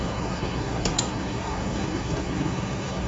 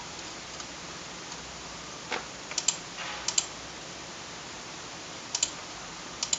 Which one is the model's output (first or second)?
first